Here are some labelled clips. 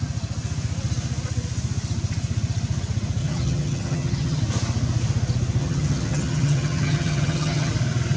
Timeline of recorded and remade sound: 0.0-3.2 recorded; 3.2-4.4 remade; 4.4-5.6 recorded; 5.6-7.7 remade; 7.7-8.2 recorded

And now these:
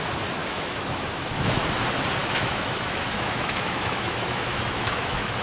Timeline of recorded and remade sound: 0.0-0.4 recorded; 0.4-1.6 remade; 1.6-2.2 recorded; 2.2-5.4 remade

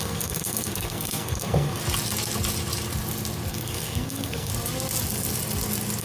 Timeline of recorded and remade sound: 0.0-1.8 remade; 1.8-3.5 recorded; 3.5-4.5 remade; 4.5-6.0 recorded

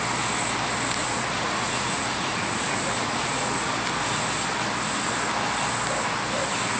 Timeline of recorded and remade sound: 0.0-1.0 recorded; 1.0-3.7 remade; 3.7-6.8 recorded

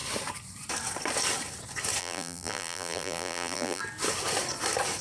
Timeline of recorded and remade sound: 0.0-2.0 recorded; 2.0-3.8 remade; 3.8-5.0 recorded

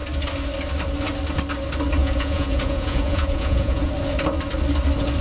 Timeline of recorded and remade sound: 0.0-2.0 recorded; 2.0-3.9 remade; 3.9-5.2 recorded

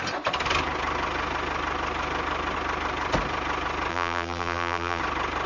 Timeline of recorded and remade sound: 0.0-3.9 recorded; 3.9-5.0 remade; 5.0-5.5 recorded